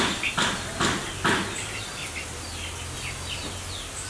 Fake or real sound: real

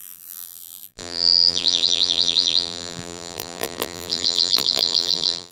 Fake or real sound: fake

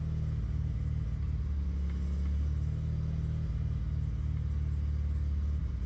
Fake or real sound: real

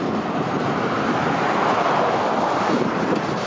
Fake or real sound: real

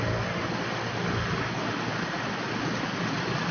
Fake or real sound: real